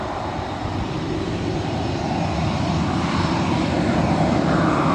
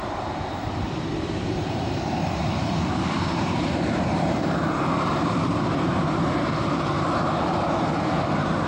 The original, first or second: first